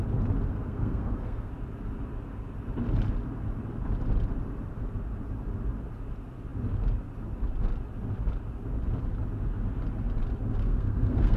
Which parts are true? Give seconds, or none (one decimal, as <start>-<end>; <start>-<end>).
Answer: 0.0-0.5; 1.5-10.6